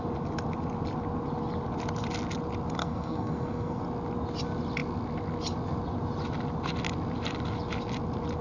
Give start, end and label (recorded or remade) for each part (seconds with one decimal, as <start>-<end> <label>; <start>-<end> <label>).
0.0-2.8 recorded; 2.8-3.8 remade; 3.8-8.4 recorded